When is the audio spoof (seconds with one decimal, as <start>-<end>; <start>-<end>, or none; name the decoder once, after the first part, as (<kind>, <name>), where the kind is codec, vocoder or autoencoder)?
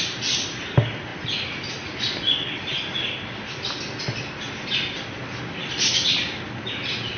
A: none